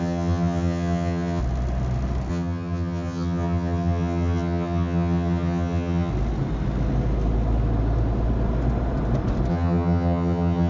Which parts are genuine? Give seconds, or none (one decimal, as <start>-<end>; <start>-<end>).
1.4-2.3; 6.1-9.5